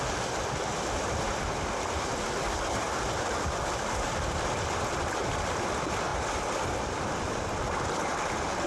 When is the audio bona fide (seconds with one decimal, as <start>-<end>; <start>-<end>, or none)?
none